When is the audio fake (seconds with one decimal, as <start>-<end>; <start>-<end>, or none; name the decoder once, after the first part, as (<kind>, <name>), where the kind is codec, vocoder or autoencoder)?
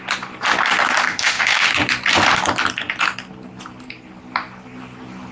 1.1-1.7 (autoencoder, DAC-VAE)